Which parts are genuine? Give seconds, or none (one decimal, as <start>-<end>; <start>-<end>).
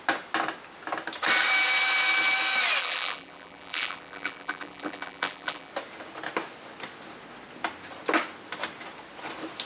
0.0-2.8; 5.7-9.7